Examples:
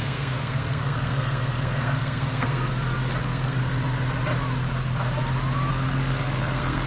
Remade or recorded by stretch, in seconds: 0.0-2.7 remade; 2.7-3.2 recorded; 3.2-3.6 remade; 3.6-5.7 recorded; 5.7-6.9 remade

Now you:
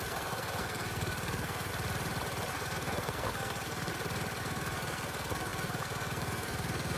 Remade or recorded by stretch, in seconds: 0.0-1.7 remade; 1.7-2.5 recorded; 2.5-3.9 remade; 3.9-4.4 recorded; 4.4-7.0 remade